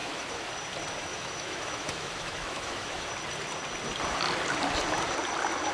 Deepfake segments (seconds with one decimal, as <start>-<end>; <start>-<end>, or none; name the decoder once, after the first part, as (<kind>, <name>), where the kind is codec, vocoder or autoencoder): 0.0-0.5 (autoencoder, DAC-VAE); 1.1-3.1